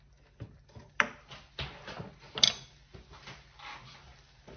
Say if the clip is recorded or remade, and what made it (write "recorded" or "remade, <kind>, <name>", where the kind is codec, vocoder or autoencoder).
recorded